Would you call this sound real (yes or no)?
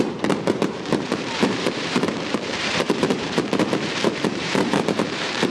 no